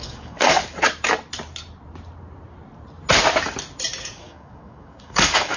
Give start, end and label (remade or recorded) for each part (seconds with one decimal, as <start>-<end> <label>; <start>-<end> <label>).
0.0-0.6 remade; 0.6-4.0 recorded; 4.0-5.6 remade